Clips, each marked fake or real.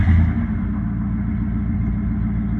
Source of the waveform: real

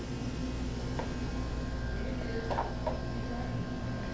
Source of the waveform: real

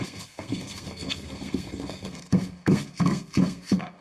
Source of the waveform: fake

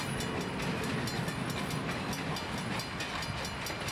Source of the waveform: real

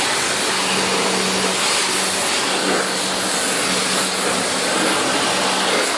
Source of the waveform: real